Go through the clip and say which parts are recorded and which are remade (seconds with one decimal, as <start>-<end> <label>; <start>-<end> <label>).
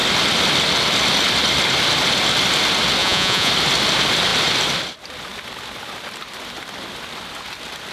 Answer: 0.0-3.0 recorded; 3.0-3.5 remade; 3.5-7.9 recorded